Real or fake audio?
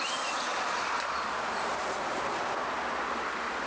real